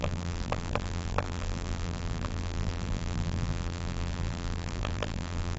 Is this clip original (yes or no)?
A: no